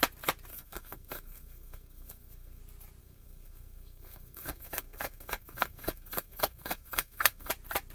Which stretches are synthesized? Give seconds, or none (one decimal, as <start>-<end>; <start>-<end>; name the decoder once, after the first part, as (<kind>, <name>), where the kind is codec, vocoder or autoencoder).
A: 0.5-2.6 (codec, SNAC); 3.0-7.5